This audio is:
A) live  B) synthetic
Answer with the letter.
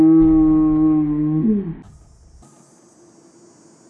A